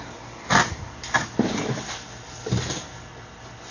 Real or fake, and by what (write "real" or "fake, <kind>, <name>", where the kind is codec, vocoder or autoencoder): real